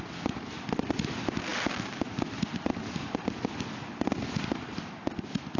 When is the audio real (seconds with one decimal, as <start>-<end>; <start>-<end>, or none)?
0.0-5.6

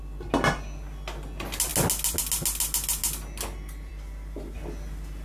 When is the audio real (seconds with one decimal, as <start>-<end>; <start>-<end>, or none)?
0.0-5.2

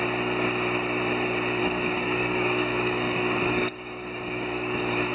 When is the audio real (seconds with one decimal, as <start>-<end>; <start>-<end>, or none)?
0.0-1.6

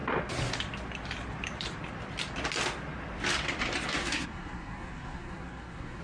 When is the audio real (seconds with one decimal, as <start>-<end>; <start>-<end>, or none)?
0.0-4.0

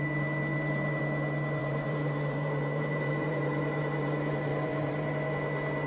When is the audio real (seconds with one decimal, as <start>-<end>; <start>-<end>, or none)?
0.0-0.5; 1.0-1.6; 5.1-5.9